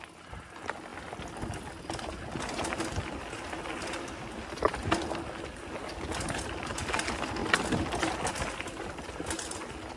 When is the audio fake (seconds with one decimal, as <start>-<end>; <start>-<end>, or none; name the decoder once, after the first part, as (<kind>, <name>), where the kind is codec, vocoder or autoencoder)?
none

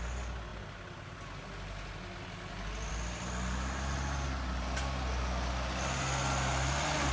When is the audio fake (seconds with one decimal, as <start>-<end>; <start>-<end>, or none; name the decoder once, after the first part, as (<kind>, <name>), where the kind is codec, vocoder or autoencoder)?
none

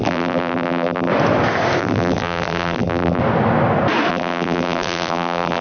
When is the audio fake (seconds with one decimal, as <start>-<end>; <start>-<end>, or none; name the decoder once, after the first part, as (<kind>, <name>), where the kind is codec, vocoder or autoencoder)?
0.0-1.1 (vocoder, BigVGAN v2); 1.8-3.2; 4.1-5.6

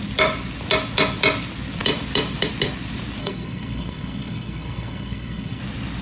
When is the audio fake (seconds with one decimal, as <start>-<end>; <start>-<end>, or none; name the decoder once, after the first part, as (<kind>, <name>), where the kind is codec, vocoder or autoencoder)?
3.2-5.6 (codec, SNAC)

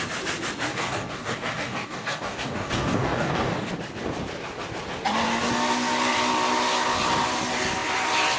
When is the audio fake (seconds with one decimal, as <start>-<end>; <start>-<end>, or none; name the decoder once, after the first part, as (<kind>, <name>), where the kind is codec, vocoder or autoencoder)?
0.7-3.7 (codec, DAC)

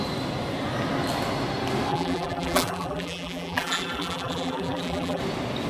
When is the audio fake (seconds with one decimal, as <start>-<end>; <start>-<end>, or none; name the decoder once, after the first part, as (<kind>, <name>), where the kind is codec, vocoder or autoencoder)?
1.9-5.2 (vocoder, BigVGAN v2)

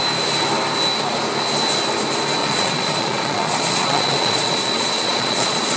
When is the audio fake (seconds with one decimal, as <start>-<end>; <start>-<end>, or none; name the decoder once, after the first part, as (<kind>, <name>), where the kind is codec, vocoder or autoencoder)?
2.4-5.8 (vocoder, Vocos)

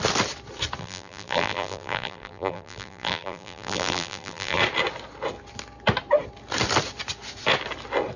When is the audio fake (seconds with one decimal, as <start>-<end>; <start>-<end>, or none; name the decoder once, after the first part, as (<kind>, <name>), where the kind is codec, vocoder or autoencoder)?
0.8-4.6 (vocoder, BigVGAN v2)